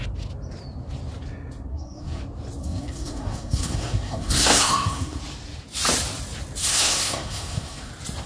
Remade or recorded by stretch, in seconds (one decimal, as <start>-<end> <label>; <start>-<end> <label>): 0.0-1.7 recorded; 1.7-2.2 remade; 2.2-2.6 recorded; 2.6-5.2 remade; 5.2-6.6 recorded; 6.6-7.9 remade; 7.9-8.3 recorded